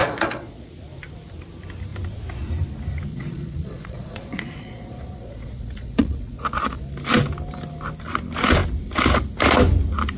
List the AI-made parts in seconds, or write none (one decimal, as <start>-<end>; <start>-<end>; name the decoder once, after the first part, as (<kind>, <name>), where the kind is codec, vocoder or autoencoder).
0.0-0.7 (vocoder, Vocos); 3.1-6.8